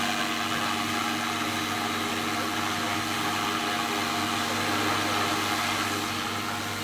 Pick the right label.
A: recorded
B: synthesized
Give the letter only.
A